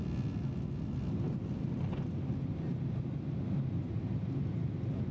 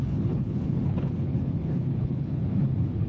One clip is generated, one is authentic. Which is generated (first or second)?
second